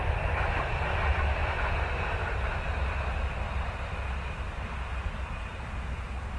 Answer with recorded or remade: recorded